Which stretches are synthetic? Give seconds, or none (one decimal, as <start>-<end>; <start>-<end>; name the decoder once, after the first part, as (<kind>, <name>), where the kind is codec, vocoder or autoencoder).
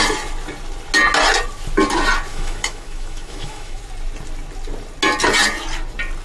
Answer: 2.3-3.8 (autoencoder, DAC-VAE)